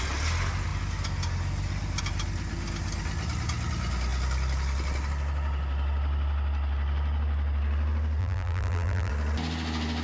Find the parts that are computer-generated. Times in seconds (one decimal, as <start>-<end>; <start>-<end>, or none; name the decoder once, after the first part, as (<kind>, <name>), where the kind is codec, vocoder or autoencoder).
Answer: 8.2-9.1 (vocoder, BigVGAN v2)